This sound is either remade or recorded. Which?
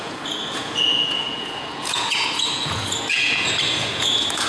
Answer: remade